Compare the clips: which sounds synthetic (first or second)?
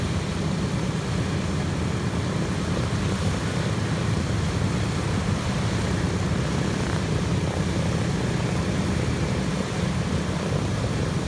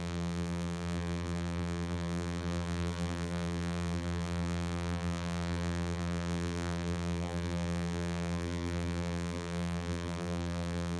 second